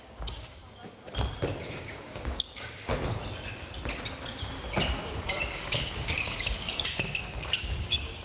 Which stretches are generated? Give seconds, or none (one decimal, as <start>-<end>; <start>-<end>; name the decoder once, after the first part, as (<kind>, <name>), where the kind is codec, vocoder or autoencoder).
0.0-0.6 (codec, DAC); 1.6-2.9; 5.2-8.2